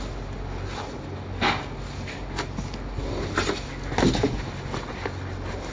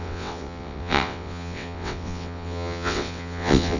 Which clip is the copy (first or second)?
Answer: second